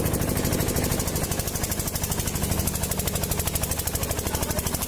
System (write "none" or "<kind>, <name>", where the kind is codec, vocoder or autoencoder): none